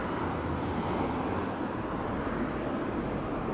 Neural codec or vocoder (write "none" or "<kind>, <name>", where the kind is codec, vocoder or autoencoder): none